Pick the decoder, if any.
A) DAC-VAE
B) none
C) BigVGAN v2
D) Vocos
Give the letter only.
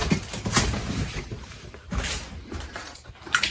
C